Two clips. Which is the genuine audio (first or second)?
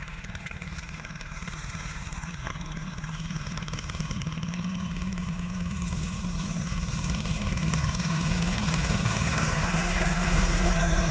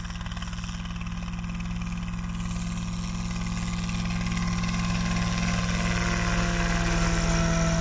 second